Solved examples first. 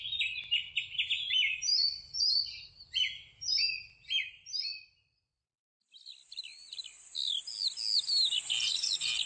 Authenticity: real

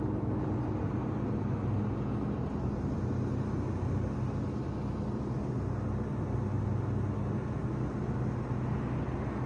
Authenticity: real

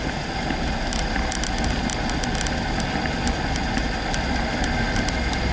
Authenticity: real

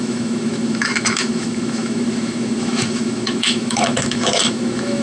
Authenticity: fake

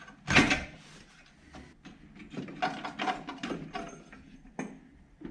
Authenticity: real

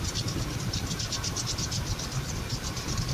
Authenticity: real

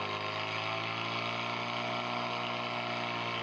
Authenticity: real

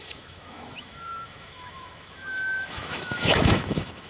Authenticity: fake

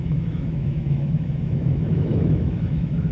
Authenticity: fake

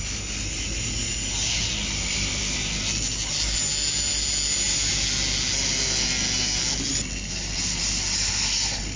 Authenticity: real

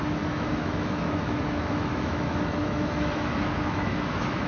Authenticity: fake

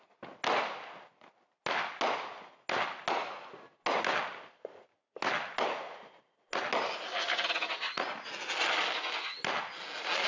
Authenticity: real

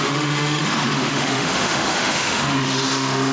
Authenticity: fake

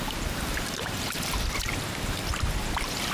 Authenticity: real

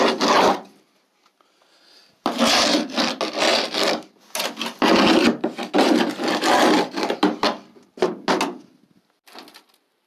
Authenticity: real